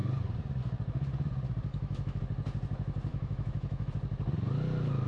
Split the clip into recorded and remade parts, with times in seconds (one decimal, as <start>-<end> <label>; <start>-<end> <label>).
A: 0.0-1.7 recorded; 1.7-2.2 remade; 2.2-3.1 recorded; 3.1-3.9 remade; 3.9-5.1 recorded